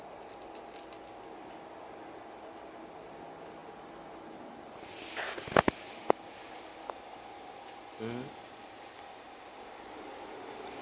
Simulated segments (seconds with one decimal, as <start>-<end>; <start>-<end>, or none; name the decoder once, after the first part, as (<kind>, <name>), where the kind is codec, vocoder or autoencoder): none